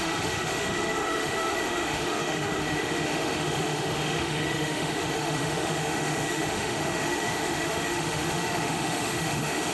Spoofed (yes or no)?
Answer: yes